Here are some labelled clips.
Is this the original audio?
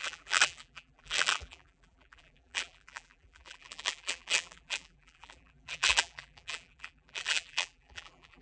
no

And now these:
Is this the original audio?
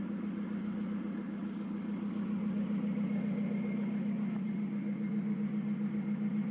yes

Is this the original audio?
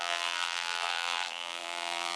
no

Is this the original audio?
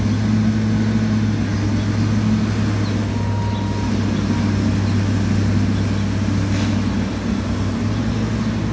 yes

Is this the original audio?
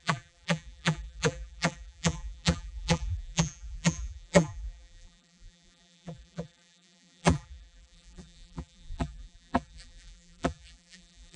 no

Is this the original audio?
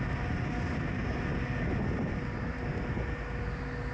yes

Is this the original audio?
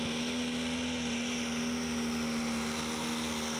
yes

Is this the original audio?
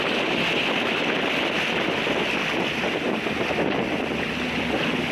yes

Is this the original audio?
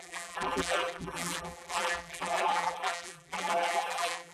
no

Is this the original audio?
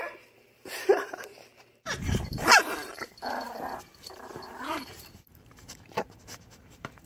no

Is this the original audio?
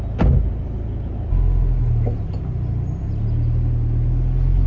yes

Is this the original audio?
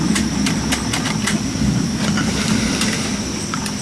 no